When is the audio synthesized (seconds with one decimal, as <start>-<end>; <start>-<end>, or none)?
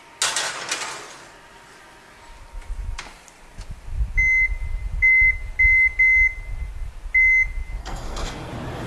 7.8-8.5